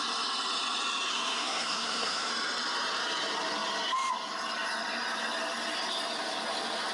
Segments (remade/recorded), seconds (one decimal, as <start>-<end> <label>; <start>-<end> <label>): 0.0-1.1 recorded; 1.1-2.3 remade; 2.3-6.9 recorded